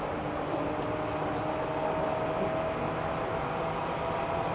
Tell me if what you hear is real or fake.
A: real